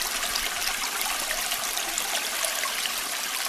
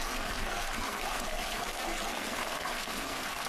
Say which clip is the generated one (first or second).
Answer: second